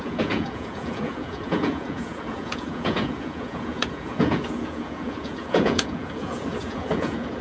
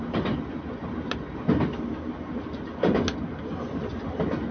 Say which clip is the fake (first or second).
first